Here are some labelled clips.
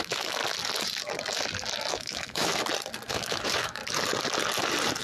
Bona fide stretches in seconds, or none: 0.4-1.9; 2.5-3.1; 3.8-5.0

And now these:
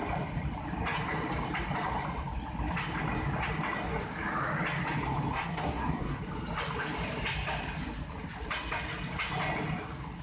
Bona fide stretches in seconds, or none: 0.0-5.3; 6.2-10.2

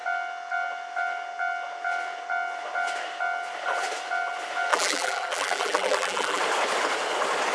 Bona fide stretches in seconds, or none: 0.0-4.7; 6.4-7.5

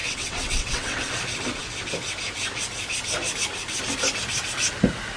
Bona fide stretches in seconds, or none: 1.1-5.2

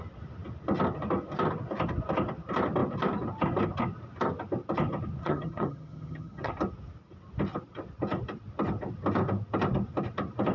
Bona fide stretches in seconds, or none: 0.0-5.2; 6.5-10.5

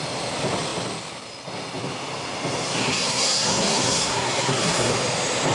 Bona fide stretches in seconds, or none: 0.0-2.8; 4.9-5.5

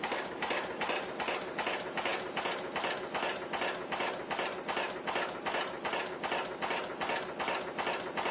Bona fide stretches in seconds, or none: 0.0-8.3